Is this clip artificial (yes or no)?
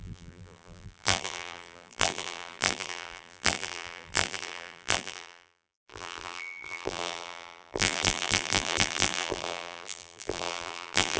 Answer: yes